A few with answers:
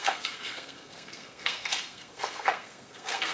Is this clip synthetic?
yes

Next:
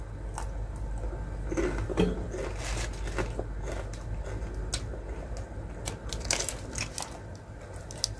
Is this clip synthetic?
no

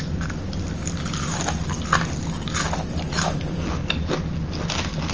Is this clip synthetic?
no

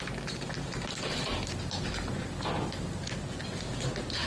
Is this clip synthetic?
no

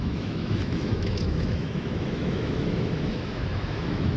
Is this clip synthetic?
yes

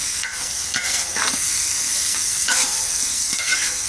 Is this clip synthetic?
yes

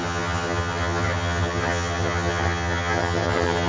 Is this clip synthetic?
yes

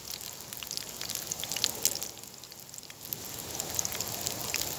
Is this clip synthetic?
no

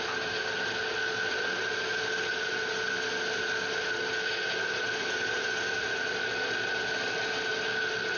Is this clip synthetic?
no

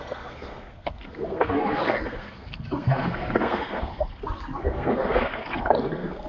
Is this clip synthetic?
yes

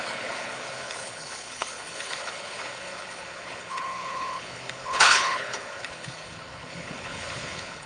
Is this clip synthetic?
yes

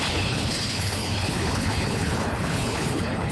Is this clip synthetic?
yes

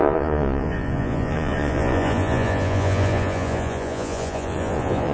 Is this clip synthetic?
yes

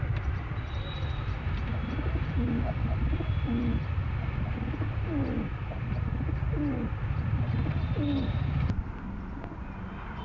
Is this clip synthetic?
yes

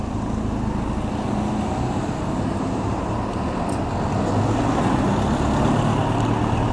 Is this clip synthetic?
no